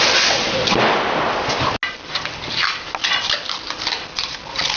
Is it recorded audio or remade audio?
recorded